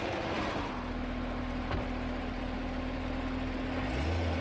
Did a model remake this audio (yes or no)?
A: no